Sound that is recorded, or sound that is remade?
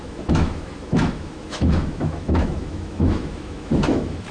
remade